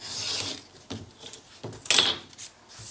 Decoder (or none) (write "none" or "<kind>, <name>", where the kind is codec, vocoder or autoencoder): none